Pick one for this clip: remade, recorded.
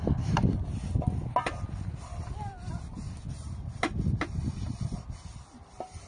recorded